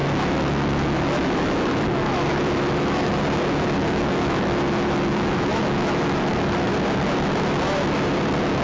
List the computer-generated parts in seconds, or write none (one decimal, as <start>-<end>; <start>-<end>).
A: 0.0-3.2; 3.8-6.7